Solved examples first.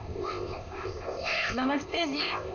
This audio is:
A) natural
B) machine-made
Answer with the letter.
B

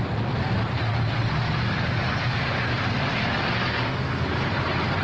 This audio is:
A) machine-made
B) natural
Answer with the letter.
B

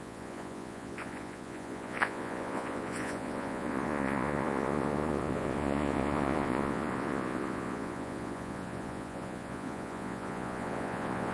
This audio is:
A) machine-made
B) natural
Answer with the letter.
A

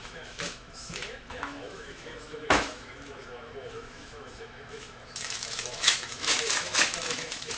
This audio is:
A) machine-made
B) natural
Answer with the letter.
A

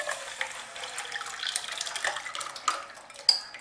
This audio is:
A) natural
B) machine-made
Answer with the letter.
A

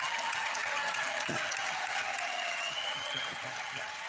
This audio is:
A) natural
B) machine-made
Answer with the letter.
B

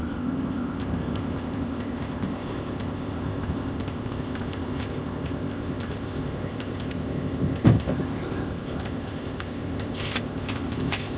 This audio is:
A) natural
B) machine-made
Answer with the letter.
B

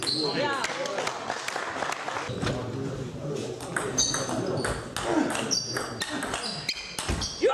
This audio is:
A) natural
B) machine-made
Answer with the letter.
A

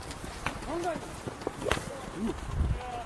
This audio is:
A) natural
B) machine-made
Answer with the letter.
A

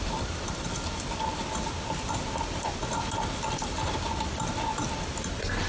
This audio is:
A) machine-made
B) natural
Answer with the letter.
B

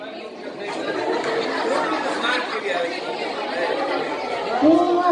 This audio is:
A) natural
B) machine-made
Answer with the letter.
A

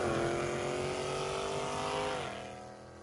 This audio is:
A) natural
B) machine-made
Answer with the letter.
A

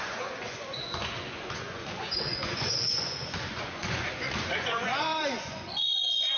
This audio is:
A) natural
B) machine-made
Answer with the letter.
B